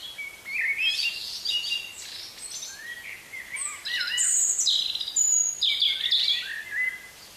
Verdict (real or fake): real